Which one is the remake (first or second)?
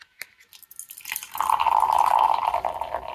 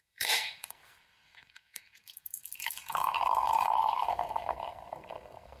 second